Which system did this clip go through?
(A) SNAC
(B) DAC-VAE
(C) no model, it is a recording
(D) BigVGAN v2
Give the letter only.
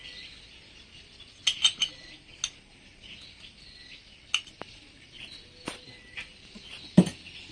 C